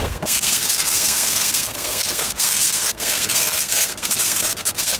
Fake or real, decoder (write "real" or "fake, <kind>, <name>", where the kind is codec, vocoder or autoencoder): fake, codec, SNAC